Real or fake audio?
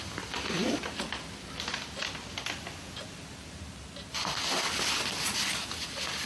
real